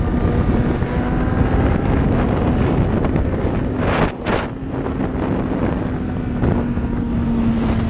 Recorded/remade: recorded